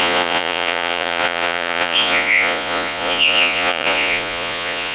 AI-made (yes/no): yes